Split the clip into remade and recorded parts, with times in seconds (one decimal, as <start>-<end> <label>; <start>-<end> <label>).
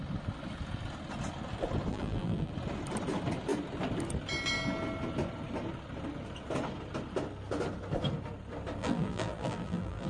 0.0-1.9 recorded; 1.9-2.5 remade; 2.5-8.8 recorded; 8.8-10.1 remade